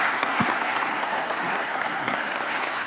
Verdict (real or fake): fake